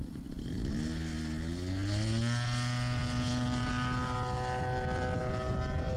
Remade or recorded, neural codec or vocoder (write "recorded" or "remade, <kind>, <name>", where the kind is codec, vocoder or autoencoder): recorded